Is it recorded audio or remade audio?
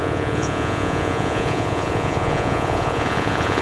remade